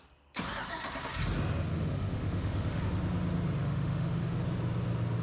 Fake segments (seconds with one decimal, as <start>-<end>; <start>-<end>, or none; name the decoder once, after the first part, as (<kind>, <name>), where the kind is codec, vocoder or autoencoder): 1.7-2.8 (autoencoder, DAC-VAE); 3.6-4.4